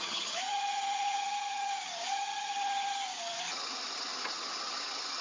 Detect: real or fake fake